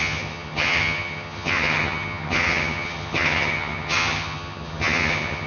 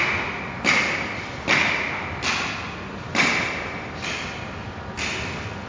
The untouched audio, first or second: second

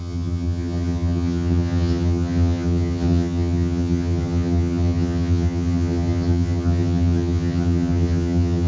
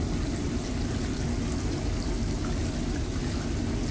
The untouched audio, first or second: second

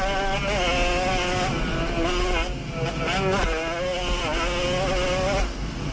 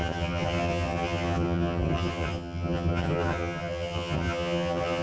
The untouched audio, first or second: first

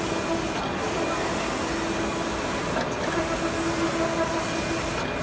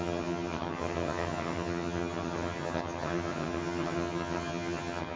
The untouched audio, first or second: first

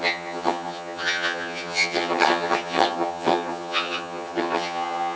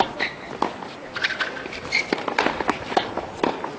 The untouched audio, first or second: second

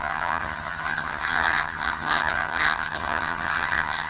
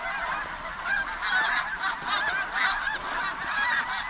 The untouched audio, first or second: second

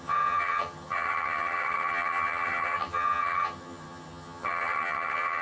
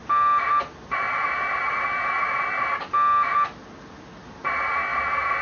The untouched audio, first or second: second